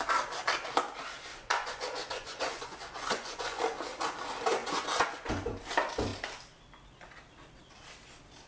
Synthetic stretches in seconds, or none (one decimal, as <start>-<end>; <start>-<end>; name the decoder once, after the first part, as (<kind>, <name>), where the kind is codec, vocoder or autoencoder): 1.3-3.6 (vocoder, Vocos); 4.6-5.3